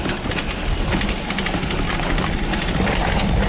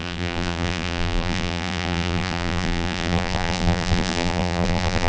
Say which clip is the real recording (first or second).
first